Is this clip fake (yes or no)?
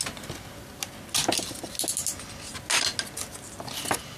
no